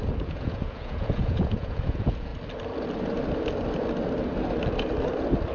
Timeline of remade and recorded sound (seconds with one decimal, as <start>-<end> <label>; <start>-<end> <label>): 0.0-2.3 remade; 2.3-5.5 recorded